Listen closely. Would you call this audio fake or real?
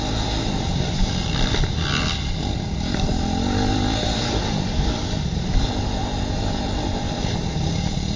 real